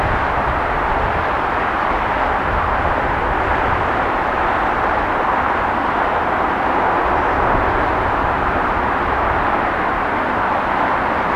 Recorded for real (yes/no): yes